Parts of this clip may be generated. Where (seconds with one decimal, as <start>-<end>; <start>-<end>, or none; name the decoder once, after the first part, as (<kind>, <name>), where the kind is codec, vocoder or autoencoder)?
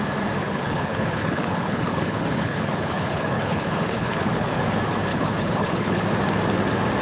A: 0.4-4.6 (codec, HILCodec); 5.1-6.0